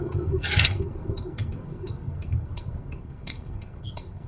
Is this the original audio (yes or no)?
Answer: no